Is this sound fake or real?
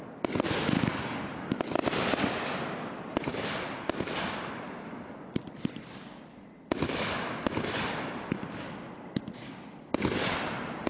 real